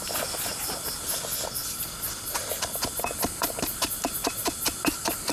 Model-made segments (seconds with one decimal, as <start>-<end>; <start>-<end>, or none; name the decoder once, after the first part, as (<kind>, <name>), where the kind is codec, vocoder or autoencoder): none